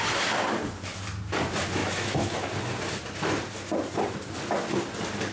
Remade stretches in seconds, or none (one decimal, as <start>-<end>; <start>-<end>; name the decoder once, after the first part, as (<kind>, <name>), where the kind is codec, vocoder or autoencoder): 1.8-2.5 (autoencoder, DAC-VAE)